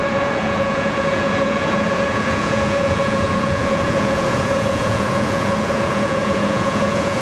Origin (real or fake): fake